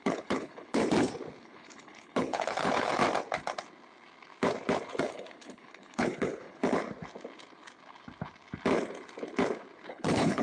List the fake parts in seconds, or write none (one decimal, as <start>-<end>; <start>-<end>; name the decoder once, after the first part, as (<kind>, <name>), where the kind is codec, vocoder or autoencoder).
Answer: 0.0-0.8 (codec, HILCodec); 1.4-3.0; 5.0-6.6; 9.9-10.4